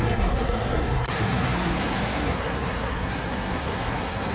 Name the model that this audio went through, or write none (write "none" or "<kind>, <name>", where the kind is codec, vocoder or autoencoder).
codec, SNAC